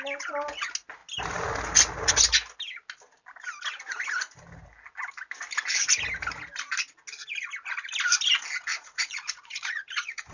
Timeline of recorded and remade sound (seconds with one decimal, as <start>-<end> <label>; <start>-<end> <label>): 0.0-8.7 recorded; 8.7-10.3 remade